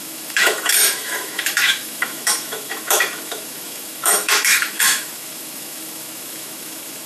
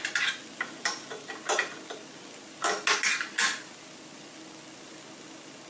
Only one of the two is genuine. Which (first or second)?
second